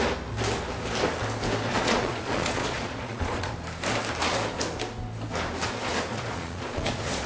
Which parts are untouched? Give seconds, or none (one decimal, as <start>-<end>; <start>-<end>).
0.0-1.7; 3.5-6.1